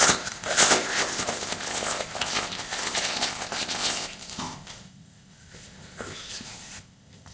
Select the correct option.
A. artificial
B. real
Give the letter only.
A